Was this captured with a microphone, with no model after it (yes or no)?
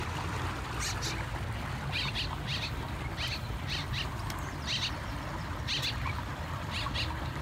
yes